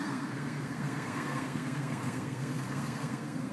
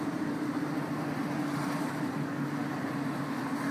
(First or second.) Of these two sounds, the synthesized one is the first